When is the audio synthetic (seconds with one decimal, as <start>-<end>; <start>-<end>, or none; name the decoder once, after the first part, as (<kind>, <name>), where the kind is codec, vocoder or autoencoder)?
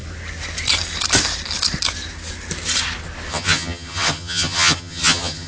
3.3-5.5 (vocoder, HiFi-GAN)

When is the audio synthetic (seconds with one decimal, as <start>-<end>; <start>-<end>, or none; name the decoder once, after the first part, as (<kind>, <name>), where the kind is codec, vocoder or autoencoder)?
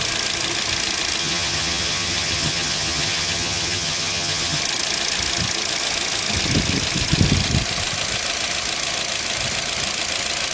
1.2-4.6 (vocoder, HiFi-GAN)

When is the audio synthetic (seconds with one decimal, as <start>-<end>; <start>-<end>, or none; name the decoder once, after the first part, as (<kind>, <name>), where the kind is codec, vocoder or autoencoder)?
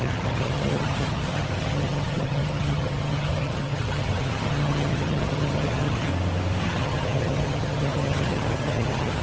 0.0-6.1 (vocoder, HiFi-GAN); 6.6-9.2